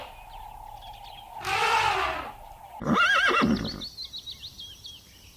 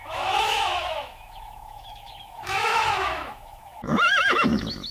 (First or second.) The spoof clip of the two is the second